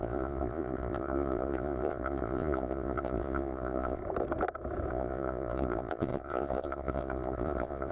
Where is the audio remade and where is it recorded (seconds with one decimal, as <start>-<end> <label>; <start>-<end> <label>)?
0.0-4.0 remade; 4.0-4.9 recorded; 4.9-7.9 remade